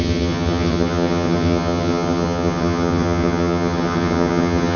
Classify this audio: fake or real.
fake